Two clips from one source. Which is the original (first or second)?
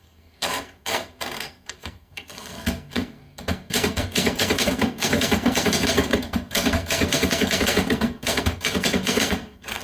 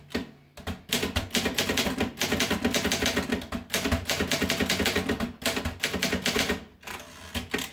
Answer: second